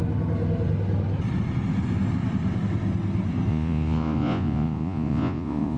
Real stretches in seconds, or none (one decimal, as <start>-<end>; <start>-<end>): 0.0-3.5